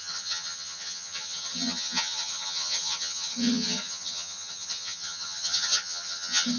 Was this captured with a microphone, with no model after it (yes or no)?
no